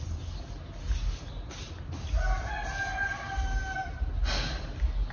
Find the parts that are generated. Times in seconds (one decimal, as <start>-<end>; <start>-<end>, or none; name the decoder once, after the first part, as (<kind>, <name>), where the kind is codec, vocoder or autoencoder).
none